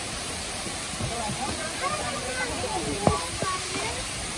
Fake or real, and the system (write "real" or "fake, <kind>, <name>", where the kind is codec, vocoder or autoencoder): fake, vocoder, BigVGAN v2